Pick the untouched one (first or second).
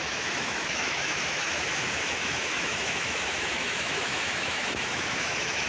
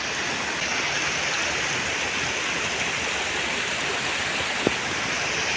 second